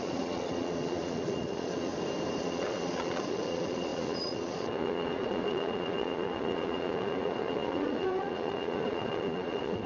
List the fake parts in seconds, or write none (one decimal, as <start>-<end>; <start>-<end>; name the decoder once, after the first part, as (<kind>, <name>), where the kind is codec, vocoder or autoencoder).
0.0-1.9 (vocoder, Vocos); 2.4-9.9